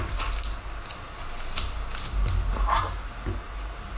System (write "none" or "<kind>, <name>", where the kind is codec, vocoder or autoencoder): none